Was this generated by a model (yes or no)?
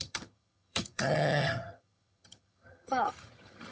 yes